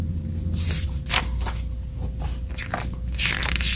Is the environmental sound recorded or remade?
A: recorded